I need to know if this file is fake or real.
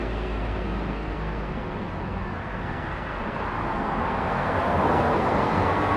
fake